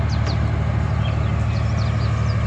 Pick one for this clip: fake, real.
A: real